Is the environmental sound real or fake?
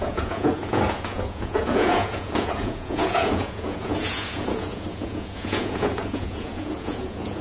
fake